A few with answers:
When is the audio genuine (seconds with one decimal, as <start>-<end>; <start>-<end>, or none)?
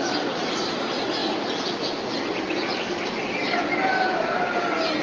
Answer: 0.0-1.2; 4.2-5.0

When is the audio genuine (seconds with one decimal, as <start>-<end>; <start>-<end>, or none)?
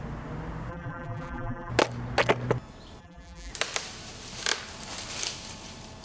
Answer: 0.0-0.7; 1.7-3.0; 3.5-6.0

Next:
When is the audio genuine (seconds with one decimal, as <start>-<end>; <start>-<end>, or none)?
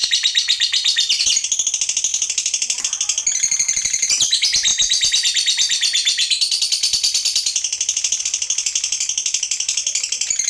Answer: 1.2-4.7; 8.2-10.5